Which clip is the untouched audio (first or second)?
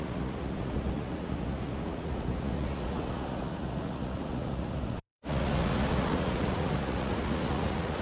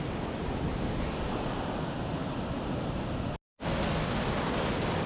second